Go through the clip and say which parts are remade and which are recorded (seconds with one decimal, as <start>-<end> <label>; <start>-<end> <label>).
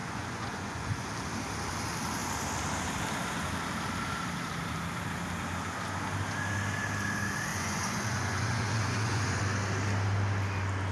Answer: 0.0-1.1 remade; 1.1-7.5 recorded; 7.5-9.4 remade; 9.4-10.9 recorded